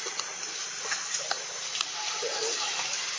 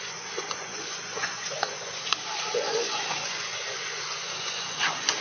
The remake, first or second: second